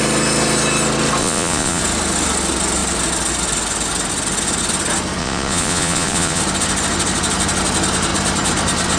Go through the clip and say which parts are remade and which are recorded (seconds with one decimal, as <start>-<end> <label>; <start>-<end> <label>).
0.0-1.2 recorded; 1.2-1.8 remade; 1.8-5.2 recorded; 5.2-6.4 remade; 6.4-9.0 recorded